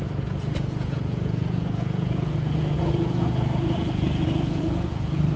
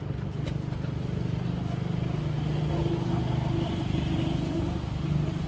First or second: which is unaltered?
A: second